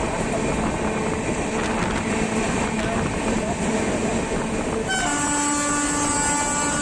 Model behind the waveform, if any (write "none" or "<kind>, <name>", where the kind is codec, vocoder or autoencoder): none